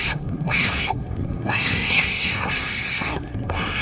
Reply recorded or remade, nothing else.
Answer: remade